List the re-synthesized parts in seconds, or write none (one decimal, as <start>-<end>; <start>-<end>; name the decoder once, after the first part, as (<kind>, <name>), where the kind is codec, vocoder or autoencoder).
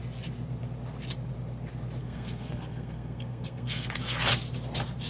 2.0-4.3 (codec, SNAC)